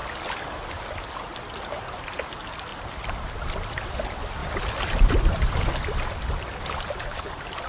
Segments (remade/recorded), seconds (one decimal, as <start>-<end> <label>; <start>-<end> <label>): 0.0-7.7 recorded